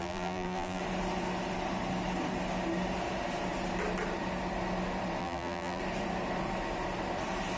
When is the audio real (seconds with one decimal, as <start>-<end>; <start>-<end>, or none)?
0.8-5.2; 5.8-7.6